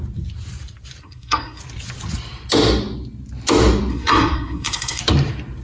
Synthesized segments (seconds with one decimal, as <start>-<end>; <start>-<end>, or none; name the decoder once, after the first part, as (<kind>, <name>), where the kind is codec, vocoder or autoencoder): 1.0-1.6 (codec, SNAC); 3.9-5.0